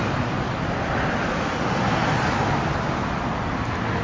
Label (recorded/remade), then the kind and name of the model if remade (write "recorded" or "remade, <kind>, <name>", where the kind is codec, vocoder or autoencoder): recorded